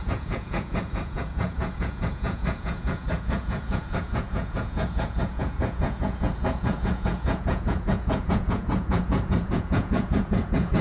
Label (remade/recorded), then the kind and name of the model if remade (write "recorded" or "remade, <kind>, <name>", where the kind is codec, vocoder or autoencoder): remade, vocoder, Vocos